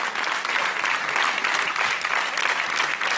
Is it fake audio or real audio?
real